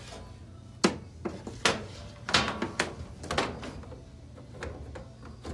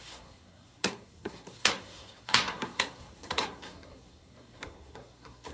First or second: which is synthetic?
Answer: second